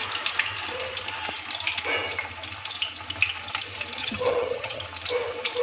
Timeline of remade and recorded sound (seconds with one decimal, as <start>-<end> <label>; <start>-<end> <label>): 0.0-4.0 recorded; 4.0-4.8 remade; 4.8-5.6 recorded